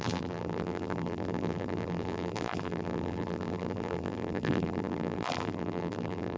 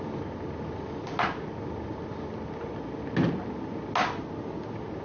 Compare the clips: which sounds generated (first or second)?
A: first